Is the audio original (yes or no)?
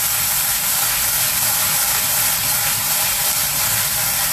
no